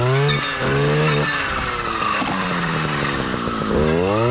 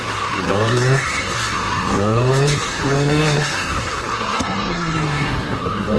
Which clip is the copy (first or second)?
second